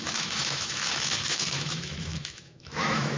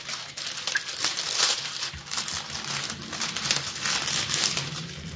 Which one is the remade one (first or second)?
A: first